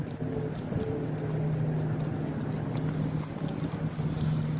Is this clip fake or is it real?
real